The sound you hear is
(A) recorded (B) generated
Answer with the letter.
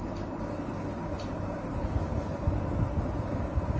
A